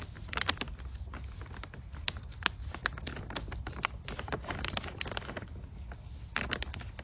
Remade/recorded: recorded